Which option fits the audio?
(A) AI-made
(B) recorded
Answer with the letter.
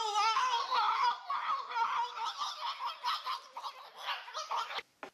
B